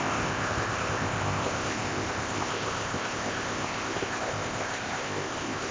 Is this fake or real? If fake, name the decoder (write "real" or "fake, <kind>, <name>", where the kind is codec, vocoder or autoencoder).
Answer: fake, codec, ZipCodec